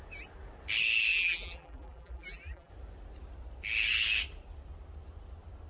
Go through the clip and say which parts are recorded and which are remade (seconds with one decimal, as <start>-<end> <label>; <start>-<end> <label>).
0.0-1.1 recorded; 1.1-2.7 remade; 2.7-5.7 recorded